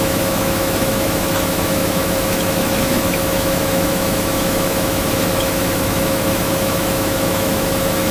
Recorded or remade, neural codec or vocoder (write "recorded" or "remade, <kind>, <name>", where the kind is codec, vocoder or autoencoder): remade, autoencoder, DAC-VAE